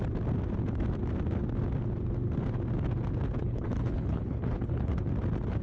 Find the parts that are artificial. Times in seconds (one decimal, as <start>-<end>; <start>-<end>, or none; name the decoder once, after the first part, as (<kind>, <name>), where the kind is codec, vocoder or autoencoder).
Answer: 3.4-4.9 (codec, HILCodec)